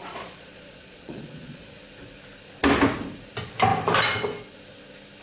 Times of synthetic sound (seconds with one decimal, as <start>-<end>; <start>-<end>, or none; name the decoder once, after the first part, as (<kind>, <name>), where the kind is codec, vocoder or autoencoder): 0.0-1.7 (vocoder, Vocos)